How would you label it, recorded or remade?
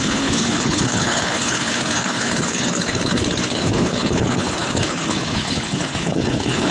remade